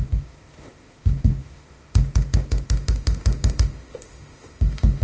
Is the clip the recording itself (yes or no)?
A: no